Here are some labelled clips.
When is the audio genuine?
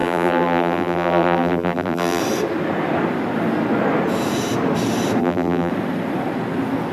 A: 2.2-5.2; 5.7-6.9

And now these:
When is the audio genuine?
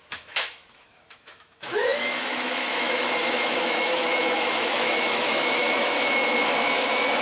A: none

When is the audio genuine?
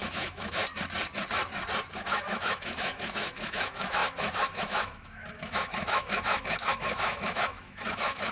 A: 0.6-1.9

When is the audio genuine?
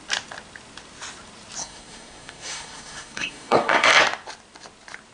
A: 0.0-1.6; 3.9-5.1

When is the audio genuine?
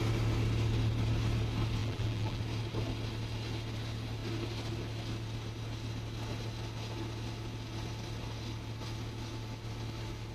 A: 0.0-1.8; 2.4-10.3